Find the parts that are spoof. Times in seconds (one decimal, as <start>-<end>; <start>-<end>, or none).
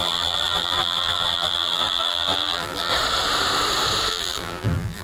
0.0-2.9; 4.1-5.0